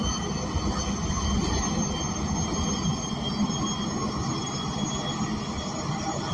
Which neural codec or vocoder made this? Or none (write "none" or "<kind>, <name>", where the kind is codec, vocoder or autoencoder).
none